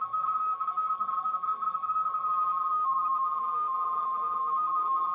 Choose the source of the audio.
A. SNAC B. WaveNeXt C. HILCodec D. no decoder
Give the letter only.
A